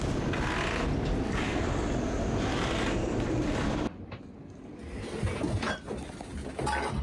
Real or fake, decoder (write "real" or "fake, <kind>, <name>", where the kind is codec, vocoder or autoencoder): real